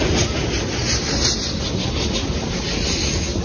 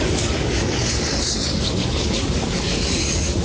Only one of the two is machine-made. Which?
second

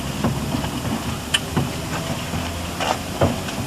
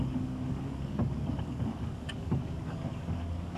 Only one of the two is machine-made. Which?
second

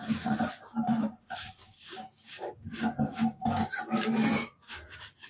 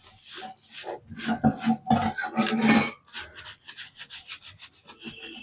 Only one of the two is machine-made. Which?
first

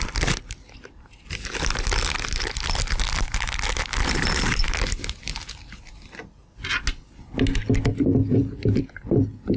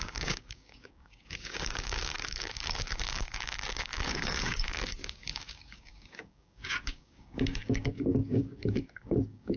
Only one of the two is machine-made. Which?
second